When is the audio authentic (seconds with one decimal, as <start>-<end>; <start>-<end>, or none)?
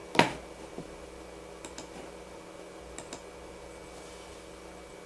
0.0-5.1